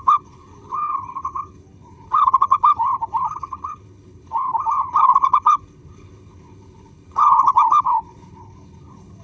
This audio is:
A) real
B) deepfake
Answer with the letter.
B